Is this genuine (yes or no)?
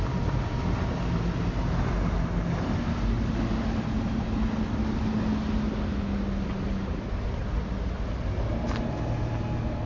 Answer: yes